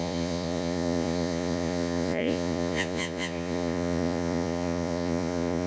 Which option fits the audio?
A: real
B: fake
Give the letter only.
B